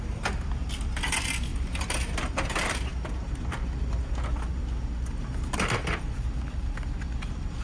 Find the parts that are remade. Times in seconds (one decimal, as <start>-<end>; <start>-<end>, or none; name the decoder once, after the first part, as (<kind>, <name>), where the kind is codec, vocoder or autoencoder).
none